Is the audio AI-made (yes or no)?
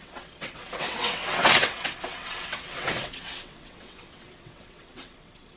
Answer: yes